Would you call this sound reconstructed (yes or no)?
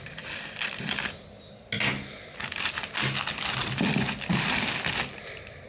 no